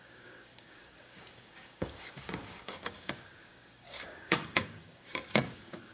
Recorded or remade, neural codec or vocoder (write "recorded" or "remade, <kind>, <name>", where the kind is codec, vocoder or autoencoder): remade, codec, DAC